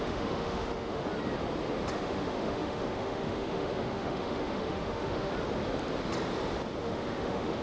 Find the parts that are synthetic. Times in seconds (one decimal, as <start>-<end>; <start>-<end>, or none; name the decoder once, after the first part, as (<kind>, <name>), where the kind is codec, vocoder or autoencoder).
0.0-1.0 (autoencoder, DAC-VAE); 1.9-5.3; 6.8-7.6